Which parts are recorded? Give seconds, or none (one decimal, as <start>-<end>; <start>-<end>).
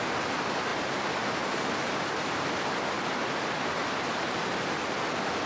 0.0-5.5